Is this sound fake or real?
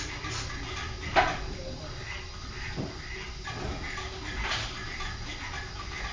real